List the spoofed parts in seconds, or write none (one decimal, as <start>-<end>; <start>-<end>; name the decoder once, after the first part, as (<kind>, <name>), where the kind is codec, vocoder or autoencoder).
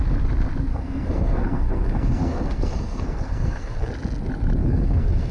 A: 0.7-3.9 (codec, SNAC); 4.6-5.3